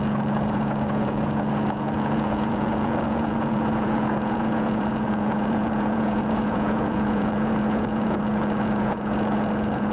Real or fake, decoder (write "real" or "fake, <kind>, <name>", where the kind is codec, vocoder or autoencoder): fake, vocoder, Vocos